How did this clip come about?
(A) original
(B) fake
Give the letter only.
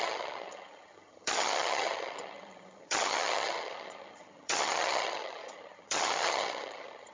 B